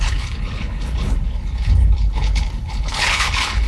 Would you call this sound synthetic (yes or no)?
yes